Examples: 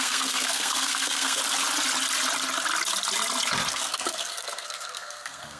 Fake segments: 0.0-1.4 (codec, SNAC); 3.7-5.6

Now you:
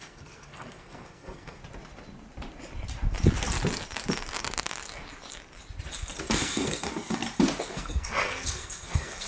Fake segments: 0.0-1.6 (codec, SNAC); 6.2-7.2; 7.7-9.3